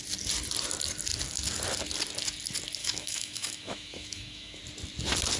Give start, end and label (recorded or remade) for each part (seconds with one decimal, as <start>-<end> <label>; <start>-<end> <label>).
0.0-2.8 recorded; 2.8-4.6 remade; 4.6-5.4 recorded